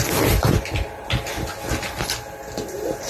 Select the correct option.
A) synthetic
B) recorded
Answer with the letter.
B